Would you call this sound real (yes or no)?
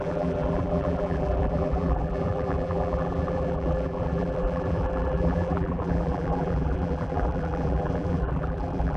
no